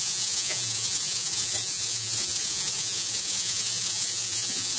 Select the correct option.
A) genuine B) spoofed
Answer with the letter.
B